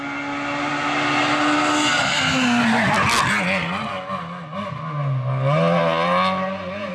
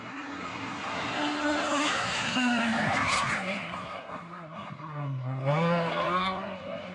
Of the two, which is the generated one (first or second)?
second